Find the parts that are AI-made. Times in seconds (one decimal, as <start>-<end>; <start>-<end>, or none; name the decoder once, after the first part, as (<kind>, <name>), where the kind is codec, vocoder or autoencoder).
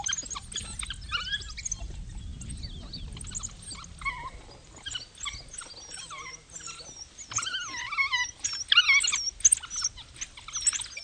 none